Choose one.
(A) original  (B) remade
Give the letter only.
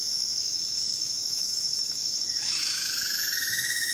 B